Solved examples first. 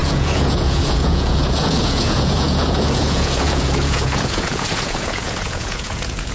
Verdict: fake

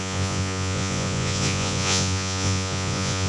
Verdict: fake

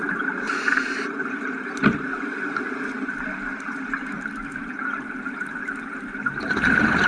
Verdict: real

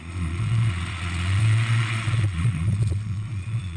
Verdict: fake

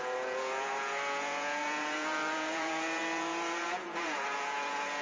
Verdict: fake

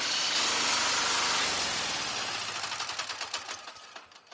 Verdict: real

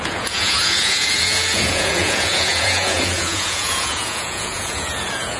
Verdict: fake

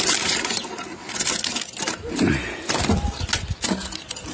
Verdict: real